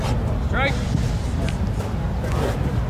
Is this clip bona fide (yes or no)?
yes